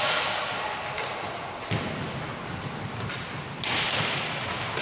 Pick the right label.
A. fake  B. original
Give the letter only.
B